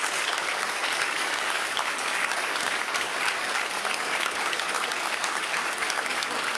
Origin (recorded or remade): remade